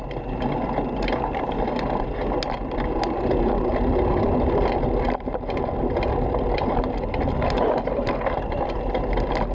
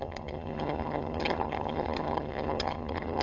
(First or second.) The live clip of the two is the first